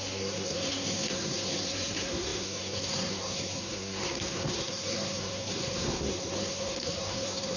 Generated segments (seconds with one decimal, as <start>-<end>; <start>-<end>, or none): 0.0-7.6